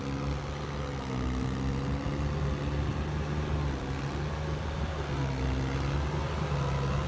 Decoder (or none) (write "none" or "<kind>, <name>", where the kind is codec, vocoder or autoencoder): none